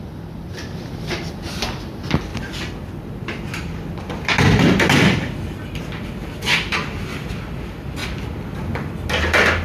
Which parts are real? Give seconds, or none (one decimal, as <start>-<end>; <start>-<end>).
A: 0.0-9.6